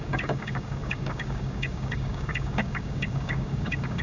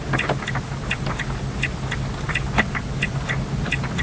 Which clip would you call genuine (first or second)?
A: second